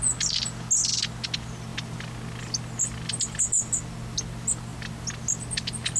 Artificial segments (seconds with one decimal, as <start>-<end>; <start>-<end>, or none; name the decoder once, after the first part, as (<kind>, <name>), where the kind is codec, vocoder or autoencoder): none